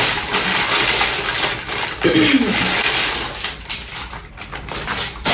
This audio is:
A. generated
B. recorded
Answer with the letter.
B